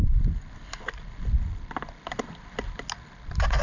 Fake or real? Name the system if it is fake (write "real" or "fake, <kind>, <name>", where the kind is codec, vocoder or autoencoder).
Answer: real